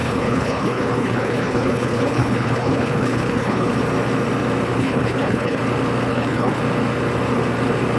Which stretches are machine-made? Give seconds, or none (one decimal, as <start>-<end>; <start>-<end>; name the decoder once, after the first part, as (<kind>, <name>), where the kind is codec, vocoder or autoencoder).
0.0-3.7 (codec, HILCodec); 4.8-5.6; 6.1-6.6